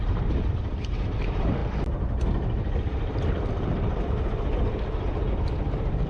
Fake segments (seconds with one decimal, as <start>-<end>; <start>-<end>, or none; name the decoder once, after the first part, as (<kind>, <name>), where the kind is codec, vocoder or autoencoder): 0.0-1.6 (vocoder, BigVGAN v2); 5.3-6.1